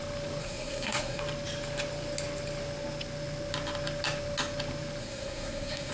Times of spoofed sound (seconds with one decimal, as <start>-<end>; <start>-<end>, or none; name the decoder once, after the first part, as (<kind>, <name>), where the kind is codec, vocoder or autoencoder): 0.4-1.2 (codec, SNAC); 5.0-5.9